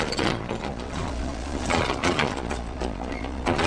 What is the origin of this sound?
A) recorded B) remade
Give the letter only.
B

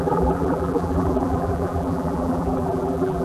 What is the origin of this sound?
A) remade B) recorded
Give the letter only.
A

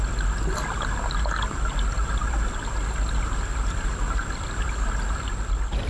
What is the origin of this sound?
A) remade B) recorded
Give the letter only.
B